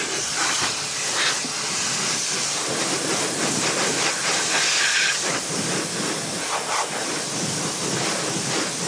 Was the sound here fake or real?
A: real